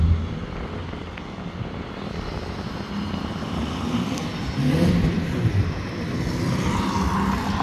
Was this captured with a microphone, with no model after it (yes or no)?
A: yes